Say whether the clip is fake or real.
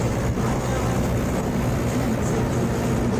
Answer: real